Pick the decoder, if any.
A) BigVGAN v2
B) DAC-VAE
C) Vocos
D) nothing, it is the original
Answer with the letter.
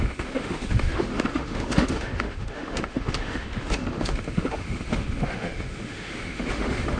B